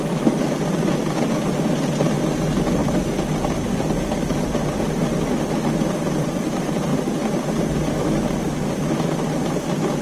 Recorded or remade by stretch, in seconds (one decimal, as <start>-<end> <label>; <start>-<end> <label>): 0.0-10.0 recorded